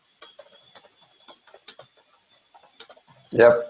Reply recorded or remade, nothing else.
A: recorded